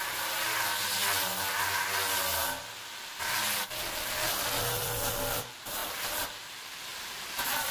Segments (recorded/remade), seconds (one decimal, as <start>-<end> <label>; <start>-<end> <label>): 0.0-5.8 recorded; 5.8-6.5 remade; 6.5-6.9 recorded; 6.9-7.7 remade